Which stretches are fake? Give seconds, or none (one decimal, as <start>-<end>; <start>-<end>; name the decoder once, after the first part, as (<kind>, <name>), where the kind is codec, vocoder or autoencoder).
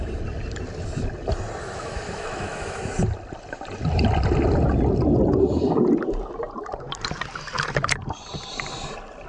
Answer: 1.6-2.8 (autoencoder, DAC-VAE)